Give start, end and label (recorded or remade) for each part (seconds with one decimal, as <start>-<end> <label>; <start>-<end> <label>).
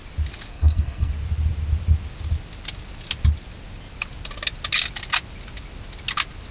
0.0-0.5 recorded; 0.5-1.1 remade; 1.1-6.5 recorded